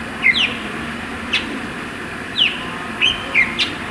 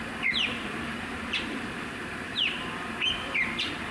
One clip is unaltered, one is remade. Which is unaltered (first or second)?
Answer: first